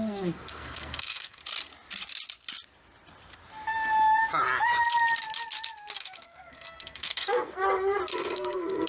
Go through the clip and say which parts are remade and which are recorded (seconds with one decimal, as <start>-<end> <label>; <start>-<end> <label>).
0.0-1.4 remade; 1.4-6.0 recorded; 6.0-7.6 remade; 7.6-8.1 recorded; 8.1-8.9 remade